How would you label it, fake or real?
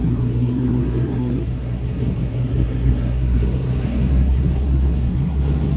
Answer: fake